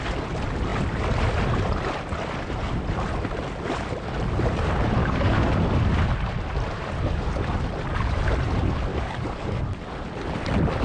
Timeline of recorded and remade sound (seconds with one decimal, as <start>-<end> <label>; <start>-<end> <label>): 0.0-5.0 recorded; 5.0-5.5 remade; 5.5-8.9 recorded; 8.9-9.6 remade; 9.6-10.8 recorded